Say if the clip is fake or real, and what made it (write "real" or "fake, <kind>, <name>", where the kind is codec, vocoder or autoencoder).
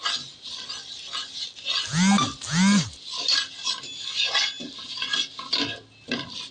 real